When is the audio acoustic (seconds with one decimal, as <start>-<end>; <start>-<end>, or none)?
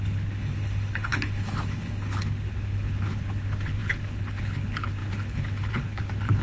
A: none